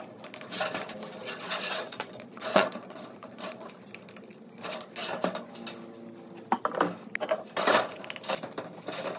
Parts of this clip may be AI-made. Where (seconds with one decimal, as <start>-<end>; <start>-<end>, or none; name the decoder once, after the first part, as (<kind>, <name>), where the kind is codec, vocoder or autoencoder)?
1.2-3.7 (vocoder, Vocos)